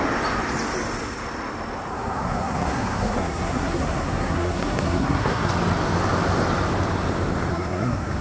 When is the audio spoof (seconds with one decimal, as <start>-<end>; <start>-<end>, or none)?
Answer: 1.9-5.5; 7.5-8.2